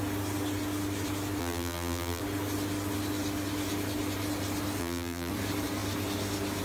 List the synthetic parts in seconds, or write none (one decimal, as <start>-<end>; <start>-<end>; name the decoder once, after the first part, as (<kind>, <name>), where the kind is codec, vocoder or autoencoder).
1.4-2.2 (vocoder, BigVGAN v2); 4.8-5.3